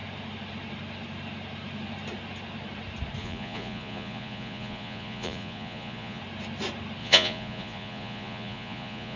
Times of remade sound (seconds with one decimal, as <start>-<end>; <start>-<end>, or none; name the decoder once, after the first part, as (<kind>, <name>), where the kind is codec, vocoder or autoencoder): 3.2-6.2 (vocoder, Vocos); 7.0-9.2